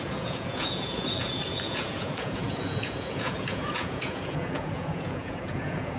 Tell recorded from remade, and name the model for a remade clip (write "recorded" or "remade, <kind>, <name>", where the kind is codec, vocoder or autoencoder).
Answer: remade, vocoder, Vocos